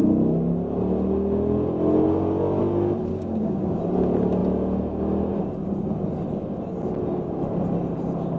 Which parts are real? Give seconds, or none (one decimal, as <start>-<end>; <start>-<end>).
0.0-3.1; 3.8-8.4